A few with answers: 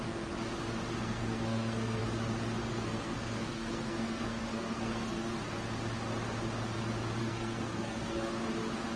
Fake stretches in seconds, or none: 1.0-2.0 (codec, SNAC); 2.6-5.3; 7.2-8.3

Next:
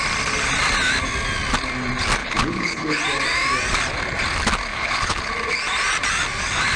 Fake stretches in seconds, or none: 2.2-3.0 (codec, HILCodec); 4.7-5.3

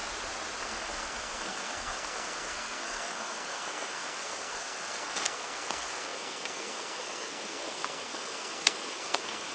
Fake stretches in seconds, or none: 0.6-9.5 (codec, SNAC)

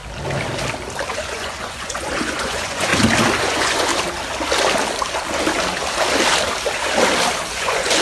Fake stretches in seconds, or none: 1.1-2.9 (vocoder, Vocos); 3.4-3.9; 7.5-8.0

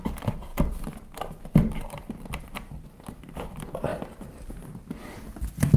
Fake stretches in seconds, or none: none

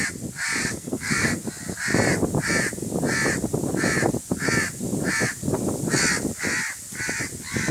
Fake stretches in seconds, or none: 0.6-1.4 (codec, SNAC)